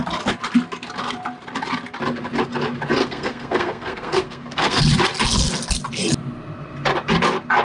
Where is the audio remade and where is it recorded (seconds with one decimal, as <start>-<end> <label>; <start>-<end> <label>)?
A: 0.0-3.0 recorded; 3.0-4.8 remade; 4.8-7.6 recorded